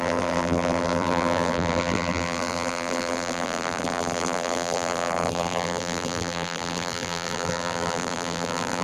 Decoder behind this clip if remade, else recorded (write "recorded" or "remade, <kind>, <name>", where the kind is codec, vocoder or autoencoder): remade, vocoder, BigVGAN v2